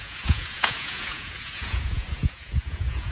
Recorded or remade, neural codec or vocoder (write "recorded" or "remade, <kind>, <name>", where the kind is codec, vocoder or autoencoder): remade, vocoder, Vocos